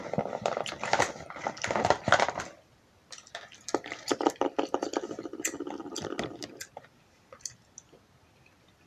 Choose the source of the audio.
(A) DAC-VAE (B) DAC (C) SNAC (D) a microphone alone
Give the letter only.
D